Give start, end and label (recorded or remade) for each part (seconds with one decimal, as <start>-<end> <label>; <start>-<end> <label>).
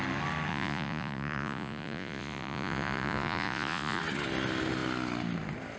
0.0-0.5 recorded; 0.5-4.0 remade; 4.0-5.8 recorded